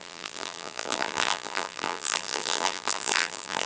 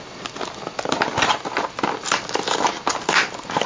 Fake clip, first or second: first